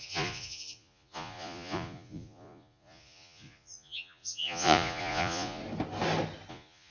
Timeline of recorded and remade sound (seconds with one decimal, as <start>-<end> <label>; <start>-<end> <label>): 0.0-5.6 remade; 5.6-6.5 recorded; 6.5-6.9 remade